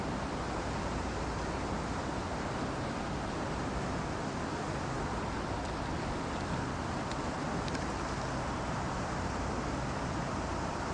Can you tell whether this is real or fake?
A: real